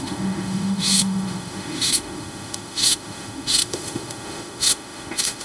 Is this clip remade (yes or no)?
yes